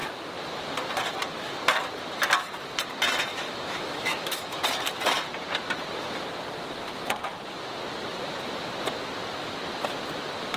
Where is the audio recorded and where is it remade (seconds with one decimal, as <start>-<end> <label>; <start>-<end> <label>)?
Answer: 0.0-3.3 recorded; 3.3-4.6 remade; 4.6-10.6 recorded